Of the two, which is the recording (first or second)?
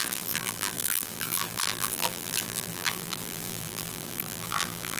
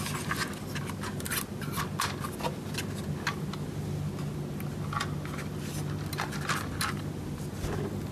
second